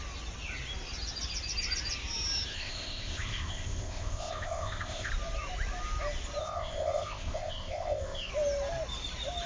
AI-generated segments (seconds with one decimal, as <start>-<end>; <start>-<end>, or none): 2.5-5.1; 6.4-8.3